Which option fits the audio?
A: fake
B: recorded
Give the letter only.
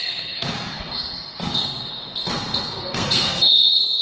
A